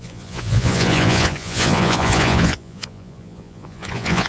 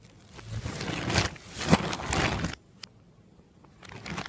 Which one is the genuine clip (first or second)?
second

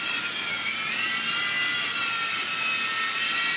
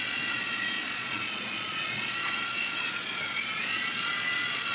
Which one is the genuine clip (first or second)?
first